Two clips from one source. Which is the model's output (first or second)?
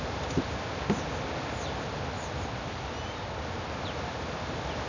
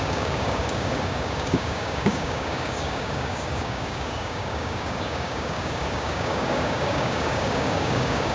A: second